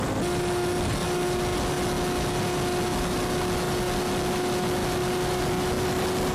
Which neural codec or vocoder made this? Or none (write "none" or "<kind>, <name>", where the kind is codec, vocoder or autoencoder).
none